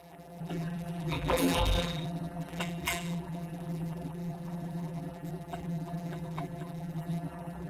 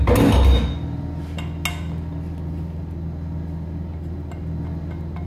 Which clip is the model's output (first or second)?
first